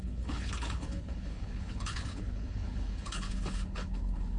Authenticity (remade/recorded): remade